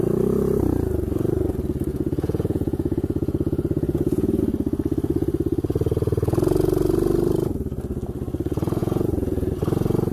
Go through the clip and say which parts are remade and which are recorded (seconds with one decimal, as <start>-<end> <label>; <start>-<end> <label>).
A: 0.0-1.9 recorded; 1.9-4.4 remade; 4.4-8.8 recorded; 8.8-9.5 remade; 9.5-10.1 recorded